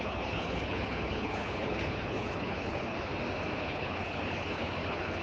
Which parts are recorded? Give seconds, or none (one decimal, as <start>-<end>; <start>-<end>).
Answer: 3.1-3.6